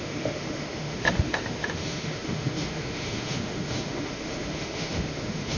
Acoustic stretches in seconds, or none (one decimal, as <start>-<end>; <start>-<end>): none